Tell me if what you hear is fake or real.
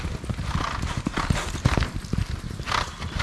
real